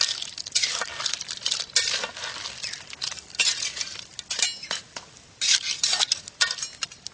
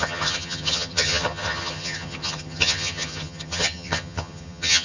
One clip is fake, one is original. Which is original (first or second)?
first